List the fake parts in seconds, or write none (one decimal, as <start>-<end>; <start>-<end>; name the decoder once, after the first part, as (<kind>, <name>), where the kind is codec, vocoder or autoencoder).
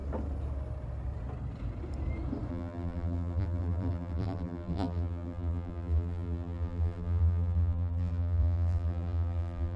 2.5-9.8 (vocoder, BigVGAN v2)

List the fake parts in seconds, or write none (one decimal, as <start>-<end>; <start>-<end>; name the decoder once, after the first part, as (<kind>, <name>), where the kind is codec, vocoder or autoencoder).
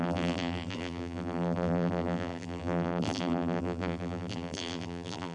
0.0-5.3 (vocoder, BigVGAN v2)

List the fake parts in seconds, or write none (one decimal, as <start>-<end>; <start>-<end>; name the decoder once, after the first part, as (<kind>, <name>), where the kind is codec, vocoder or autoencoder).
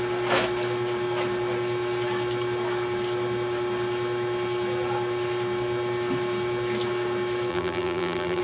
7.5-8.4 (vocoder, BigVGAN v2)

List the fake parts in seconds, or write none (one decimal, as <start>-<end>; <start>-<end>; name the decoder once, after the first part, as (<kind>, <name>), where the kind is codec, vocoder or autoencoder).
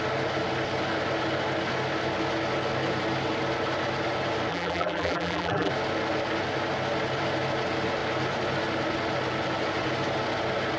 4.5-5.7 (vocoder, BigVGAN v2)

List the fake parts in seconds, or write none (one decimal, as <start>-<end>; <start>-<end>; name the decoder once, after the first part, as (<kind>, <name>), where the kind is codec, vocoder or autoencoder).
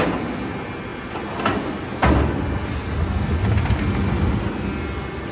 none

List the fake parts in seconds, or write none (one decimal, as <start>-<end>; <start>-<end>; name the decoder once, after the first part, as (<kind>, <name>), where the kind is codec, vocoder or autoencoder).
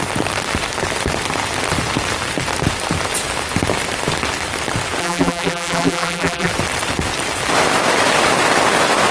5.0-6.5 (vocoder, BigVGAN v2)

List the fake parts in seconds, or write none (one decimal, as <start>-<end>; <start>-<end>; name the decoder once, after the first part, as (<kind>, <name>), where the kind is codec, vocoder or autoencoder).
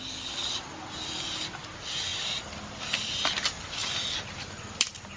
3.8-5.2 (vocoder, BigVGAN v2)